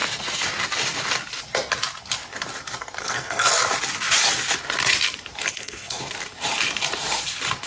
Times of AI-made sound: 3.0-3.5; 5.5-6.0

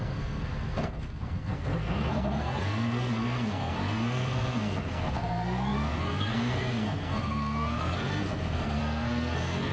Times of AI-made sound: 0.0-9.7

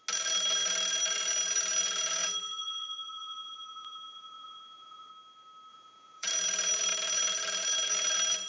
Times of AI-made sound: 2.2-5.1; 5.7-6.3

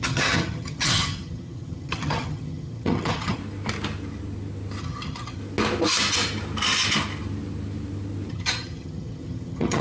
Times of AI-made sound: 0.0-3.4; 4.8-5.4; 8.3-9.8

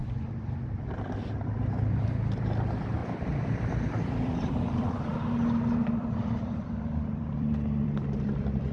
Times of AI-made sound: 0.0-5.1; 5.8-8.7

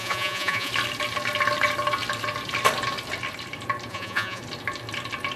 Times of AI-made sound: 0.0-0.7; 3.9-4.4